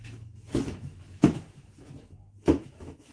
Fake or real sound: fake